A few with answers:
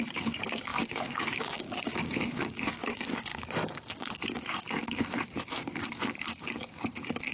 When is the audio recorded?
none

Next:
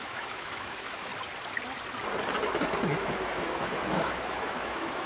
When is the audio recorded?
1.1-2.8

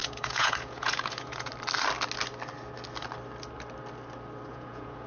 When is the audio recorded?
1.5-4.5